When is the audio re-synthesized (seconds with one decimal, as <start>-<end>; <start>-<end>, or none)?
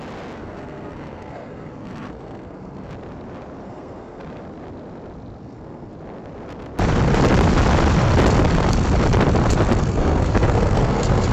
0.4-2.9; 3.6-4.2; 5.4-5.9; 9.8-11.3